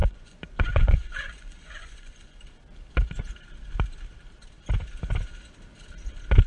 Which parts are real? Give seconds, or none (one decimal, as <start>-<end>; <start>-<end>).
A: 2.4-6.5